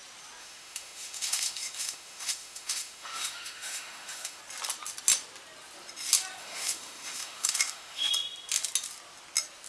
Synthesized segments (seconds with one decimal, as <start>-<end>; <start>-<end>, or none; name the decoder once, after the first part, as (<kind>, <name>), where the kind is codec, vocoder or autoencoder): 0.4-4.4 (autoencoder, DAC-VAE); 6.4-8.1